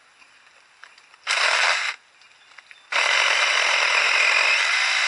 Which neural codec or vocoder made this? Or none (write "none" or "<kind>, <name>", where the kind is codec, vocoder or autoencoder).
none